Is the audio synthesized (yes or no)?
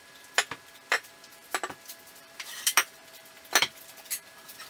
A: yes